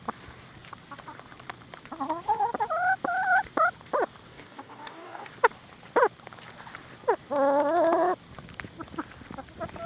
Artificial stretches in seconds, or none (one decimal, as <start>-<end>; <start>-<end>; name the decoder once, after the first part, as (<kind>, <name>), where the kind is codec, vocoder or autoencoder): 4.3-5.3 (codec, DAC)